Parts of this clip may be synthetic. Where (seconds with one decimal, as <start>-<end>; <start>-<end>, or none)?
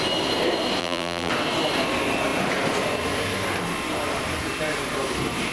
0.8-1.3